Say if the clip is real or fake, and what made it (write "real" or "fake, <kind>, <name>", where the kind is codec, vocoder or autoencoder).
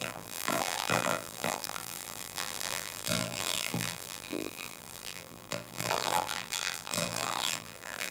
fake, vocoder, BigVGAN v2